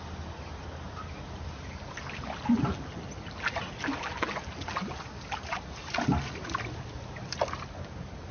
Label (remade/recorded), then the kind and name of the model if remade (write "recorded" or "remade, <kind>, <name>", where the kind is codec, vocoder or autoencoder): recorded